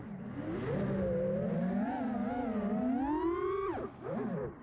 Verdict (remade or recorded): recorded